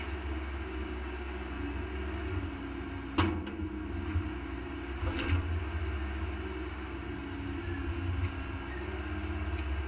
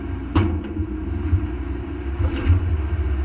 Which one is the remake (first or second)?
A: second